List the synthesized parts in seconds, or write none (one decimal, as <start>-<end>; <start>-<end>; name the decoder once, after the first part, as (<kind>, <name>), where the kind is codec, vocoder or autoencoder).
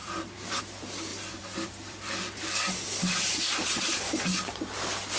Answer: 0.0-0.6 (vocoder, BigVGAN v2); 1.1-4.2